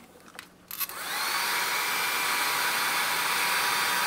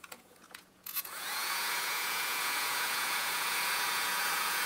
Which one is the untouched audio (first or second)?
first